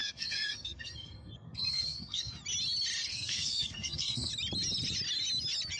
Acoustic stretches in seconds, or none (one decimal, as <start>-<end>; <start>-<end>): 2.3-3.1; 4.3-5.8